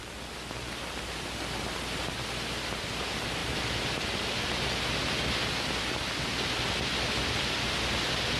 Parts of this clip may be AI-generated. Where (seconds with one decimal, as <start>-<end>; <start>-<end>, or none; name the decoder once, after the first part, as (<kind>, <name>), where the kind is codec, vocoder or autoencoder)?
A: none